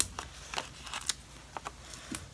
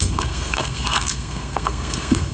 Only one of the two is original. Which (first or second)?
first